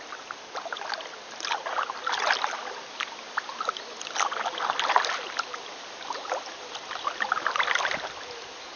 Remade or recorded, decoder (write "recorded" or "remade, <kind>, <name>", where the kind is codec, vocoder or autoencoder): recorded